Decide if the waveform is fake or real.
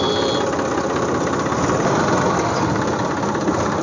real